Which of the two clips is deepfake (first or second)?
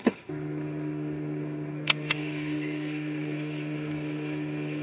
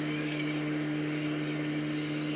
first